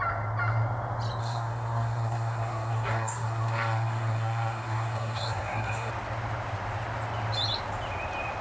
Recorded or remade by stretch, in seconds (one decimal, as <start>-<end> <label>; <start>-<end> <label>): 0.0-1.2 recorded; 1.2-5.9 remade; 5.9-8.4 recorded